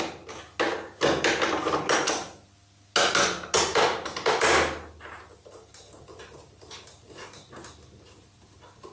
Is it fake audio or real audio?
real